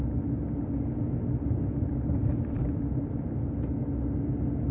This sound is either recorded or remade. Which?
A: recorded